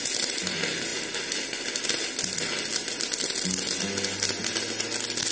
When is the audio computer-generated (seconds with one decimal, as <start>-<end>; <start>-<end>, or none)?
none